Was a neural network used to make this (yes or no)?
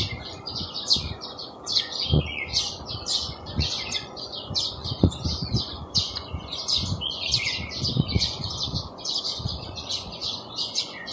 yes